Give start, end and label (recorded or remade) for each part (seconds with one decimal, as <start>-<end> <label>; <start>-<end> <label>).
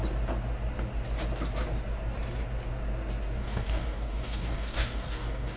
0.0-3.4 recorded; 3.4-5.6 remade